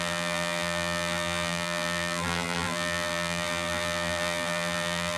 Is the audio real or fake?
fake